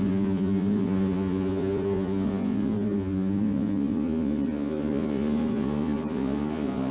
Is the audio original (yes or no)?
no